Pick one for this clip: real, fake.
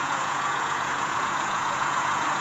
fake